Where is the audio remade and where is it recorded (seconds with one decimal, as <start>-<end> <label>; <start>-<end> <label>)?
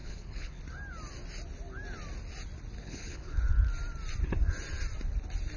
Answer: 0.0-0.6 remade; 0.6-2.8 recorded; 2.8-3.4 remade; 3.4-5.6 recorded